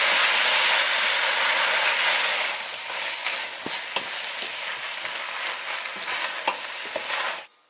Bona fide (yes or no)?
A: yes